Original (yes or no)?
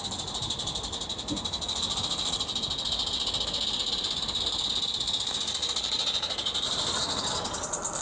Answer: yes